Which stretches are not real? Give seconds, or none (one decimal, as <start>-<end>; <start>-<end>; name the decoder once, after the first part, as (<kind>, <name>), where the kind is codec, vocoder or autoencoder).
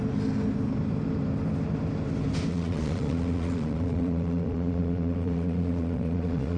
2.5-6.6 (vocoder, Vocos)